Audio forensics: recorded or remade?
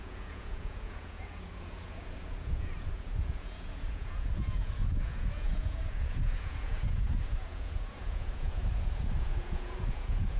remade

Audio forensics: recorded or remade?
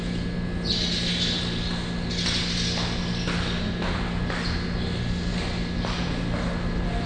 recorded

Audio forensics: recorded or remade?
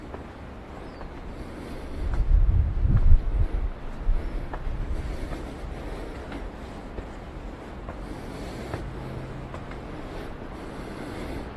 recorded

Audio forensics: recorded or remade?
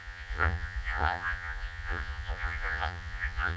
remade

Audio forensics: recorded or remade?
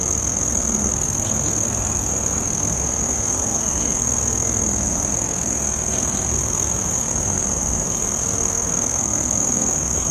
remade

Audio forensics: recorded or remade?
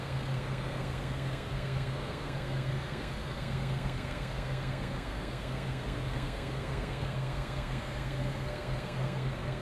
remade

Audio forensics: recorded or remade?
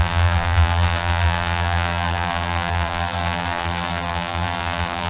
remade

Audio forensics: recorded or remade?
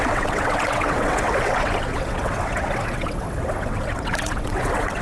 remade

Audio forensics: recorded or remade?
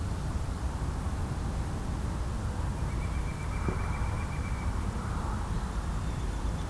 recorded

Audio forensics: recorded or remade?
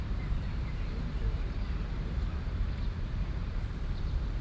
remade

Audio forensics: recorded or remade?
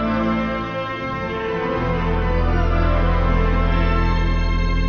recorded